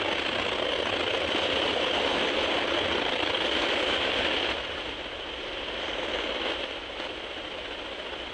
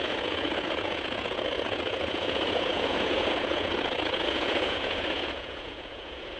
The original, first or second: first